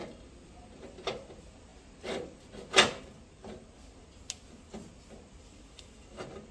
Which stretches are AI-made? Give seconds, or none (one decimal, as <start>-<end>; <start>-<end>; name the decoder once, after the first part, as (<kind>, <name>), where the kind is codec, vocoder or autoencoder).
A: none